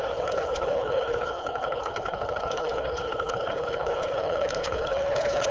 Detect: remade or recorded remade